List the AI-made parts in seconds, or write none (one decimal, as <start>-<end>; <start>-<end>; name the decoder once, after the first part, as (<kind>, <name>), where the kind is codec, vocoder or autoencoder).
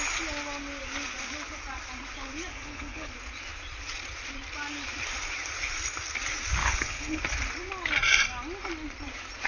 2.5-3.1 (codec, HILCodec); 6.6-7.2